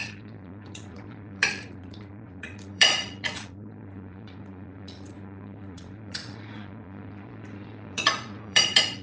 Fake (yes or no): yes